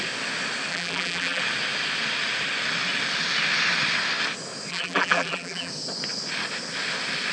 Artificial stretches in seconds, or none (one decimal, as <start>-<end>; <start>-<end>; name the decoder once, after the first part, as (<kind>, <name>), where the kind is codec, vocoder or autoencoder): 0.7-1.4 (vocoder, BigVGAN v2); 4.7-5.7